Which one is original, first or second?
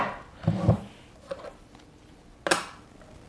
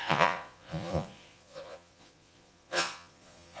first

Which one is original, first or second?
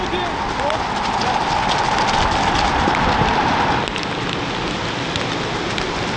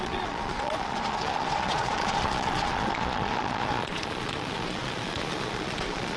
first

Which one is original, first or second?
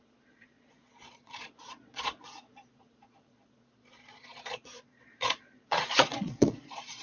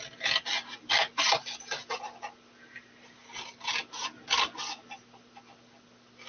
second